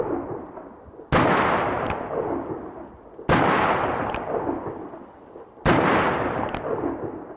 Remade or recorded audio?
recorded